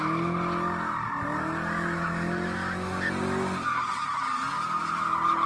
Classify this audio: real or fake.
real